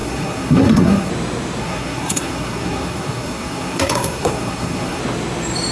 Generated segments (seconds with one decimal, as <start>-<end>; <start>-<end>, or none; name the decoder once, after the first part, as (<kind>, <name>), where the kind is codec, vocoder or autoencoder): 0.0-1.1 (codec, SNAC); 1.6-5.0